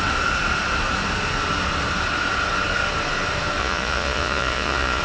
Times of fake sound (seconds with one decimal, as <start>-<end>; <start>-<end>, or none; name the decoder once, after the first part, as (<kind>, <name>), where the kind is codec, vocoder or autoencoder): 3.6-5.0 (vocoder, Vocos)